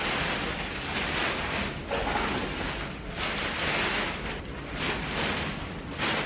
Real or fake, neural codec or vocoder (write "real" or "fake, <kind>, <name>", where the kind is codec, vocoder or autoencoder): real